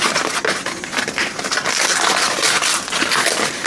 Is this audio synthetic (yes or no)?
no